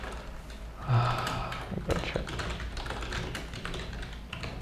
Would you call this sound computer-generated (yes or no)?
no